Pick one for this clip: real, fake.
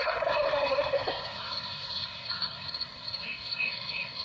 fake